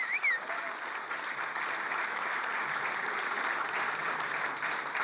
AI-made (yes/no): no